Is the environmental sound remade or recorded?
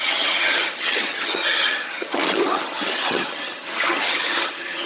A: remade